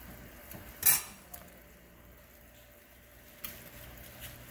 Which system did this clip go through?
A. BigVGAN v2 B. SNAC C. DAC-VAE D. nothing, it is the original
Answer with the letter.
D